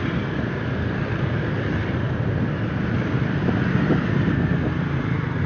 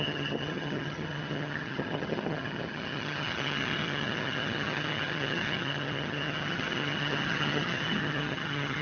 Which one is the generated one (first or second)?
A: second